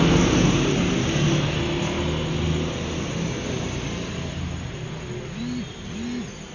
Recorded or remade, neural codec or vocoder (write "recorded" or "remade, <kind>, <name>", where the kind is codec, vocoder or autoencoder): recorded